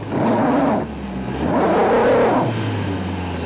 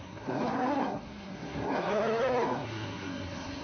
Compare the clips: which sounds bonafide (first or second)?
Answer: first